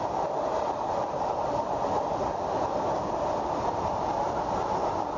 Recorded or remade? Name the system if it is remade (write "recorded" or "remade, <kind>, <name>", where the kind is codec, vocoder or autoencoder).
recorded